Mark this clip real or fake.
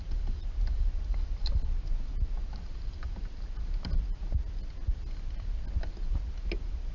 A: real